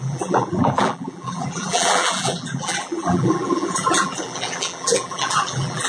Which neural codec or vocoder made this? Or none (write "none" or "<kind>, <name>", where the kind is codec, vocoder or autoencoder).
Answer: vocoder, BigVGAN v2